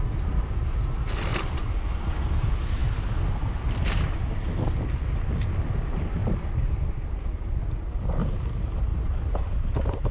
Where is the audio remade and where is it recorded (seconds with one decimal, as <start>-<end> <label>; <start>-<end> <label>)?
0.0-1.3 recorded; 1.3-2.1 remade; 2.1-6.2 recorded; 6.2-7.6 remade; 7.6-8.9 recorded; 8.9-9.4 remade; 9.4-10.1 recorded